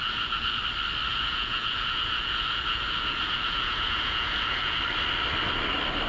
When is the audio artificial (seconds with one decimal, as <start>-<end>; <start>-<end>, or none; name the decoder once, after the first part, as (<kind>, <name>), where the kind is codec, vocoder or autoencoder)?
0.0-0.6 (vocoder, Vocos); 1.1-4.8